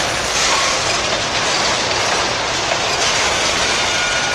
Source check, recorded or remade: recorded